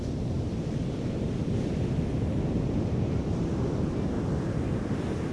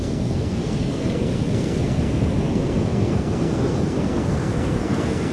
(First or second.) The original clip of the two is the first